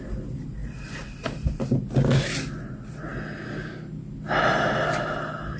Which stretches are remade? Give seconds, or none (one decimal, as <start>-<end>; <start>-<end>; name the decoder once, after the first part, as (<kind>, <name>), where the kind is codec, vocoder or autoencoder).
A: none